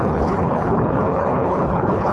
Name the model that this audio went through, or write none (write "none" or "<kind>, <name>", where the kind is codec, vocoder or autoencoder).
codec, HILCodec